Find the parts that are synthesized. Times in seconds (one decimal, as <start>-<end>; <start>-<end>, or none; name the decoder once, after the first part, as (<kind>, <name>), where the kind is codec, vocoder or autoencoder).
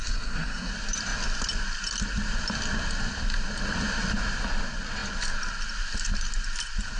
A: 0.0-0.7 (codec, SNAC)